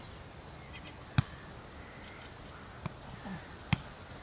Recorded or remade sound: recorded